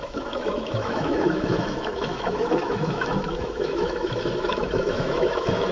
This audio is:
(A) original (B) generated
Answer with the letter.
B